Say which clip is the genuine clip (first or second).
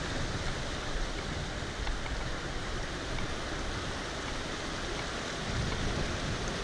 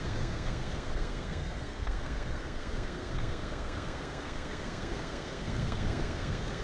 first